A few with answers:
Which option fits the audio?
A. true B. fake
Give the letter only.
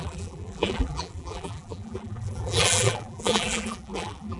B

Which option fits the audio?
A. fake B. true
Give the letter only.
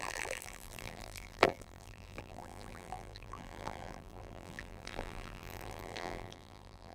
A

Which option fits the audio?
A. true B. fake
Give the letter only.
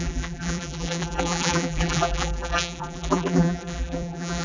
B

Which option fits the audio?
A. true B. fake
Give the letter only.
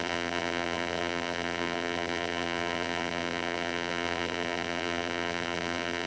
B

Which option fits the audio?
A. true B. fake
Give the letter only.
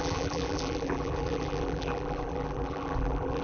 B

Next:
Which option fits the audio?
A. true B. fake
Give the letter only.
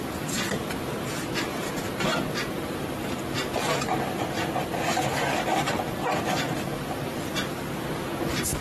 B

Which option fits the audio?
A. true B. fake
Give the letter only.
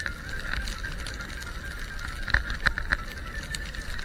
A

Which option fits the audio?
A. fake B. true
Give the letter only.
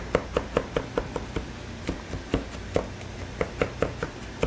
B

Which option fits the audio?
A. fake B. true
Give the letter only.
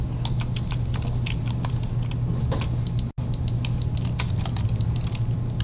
B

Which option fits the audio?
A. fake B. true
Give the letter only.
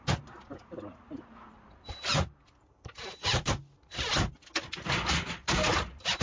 B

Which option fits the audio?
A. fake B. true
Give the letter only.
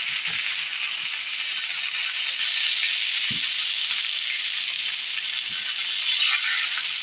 B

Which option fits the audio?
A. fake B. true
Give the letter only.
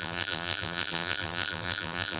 A